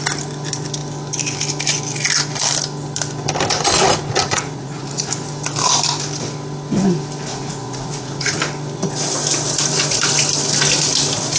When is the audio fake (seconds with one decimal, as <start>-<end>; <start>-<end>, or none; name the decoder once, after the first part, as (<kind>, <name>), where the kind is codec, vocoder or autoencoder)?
4.2-5.1 (vocoder, Vocos); 7.3-8.3